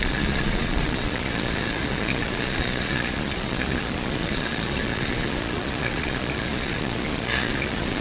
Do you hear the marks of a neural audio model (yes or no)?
yes